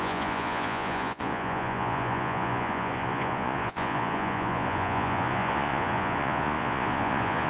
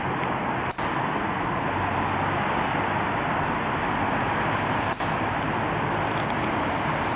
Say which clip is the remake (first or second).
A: first